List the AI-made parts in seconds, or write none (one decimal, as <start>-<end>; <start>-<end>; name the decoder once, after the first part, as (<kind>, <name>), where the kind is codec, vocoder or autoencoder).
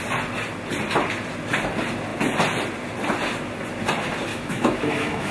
4.3-5.3 (autoencoder, DAC-VAE)